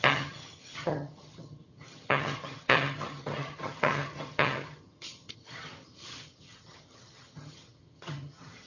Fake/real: fake